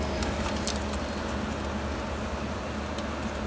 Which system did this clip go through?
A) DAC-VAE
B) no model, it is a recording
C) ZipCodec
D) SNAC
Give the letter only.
B